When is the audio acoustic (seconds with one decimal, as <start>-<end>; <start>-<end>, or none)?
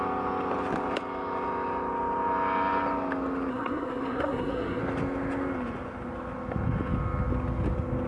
0.0-3.5; 4.8-8.1